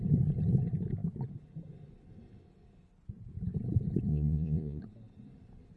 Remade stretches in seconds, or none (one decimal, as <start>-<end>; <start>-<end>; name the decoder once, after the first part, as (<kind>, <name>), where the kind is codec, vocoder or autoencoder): 4.1-4.8 (vocoder, Vocos)